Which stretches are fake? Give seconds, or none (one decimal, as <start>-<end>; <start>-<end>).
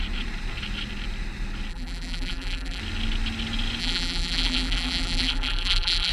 1.7-2.8; 3.8-6.1